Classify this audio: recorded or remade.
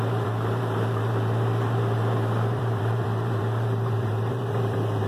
remade